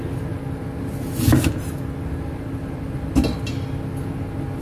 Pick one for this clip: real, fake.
real